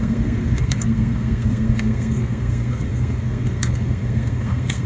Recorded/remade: remade